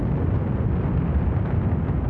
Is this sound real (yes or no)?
yes